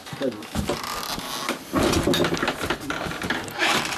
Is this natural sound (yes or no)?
yes